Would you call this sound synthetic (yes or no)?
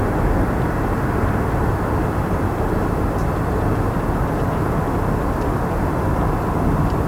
no